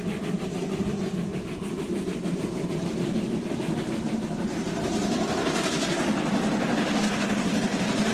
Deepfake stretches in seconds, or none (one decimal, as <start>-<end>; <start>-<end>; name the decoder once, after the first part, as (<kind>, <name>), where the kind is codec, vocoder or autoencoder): none